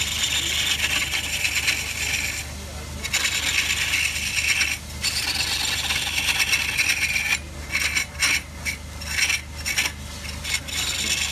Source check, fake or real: real